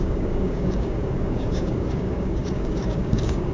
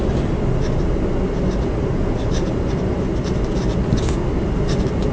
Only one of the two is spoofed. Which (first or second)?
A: first